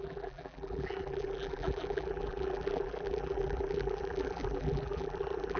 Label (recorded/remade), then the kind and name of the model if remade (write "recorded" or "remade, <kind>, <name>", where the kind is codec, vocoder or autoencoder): remade, vocoder, BigVGAN v2